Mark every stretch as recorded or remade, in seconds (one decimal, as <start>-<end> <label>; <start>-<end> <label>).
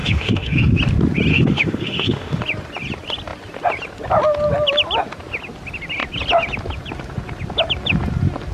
0.0-0.8 remade; 0.8-1.3 recorded; 1.3-2.4 remade; 2.4-8.5 recorded